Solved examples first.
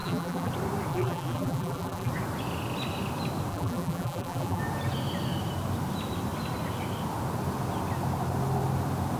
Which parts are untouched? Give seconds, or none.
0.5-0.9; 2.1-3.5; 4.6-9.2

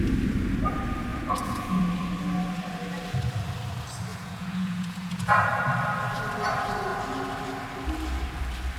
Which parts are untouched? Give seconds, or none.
0.0-1.1; 1.8-4.1; 5.6-8.8

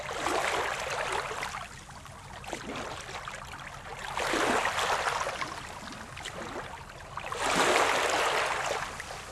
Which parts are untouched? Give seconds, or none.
0.0-9.3

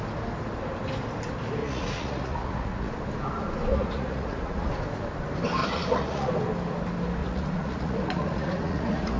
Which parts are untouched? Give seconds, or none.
0.0-1.6; 2.9-3.7; 4.7-5.6; 6.3-7.2

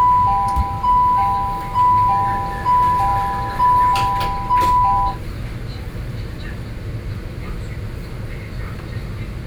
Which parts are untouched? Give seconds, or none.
0.0-9.5

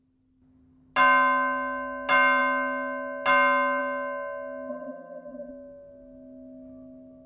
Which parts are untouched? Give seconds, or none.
0.0-4.7; 5.5-7.3